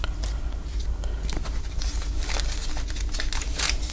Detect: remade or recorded recorded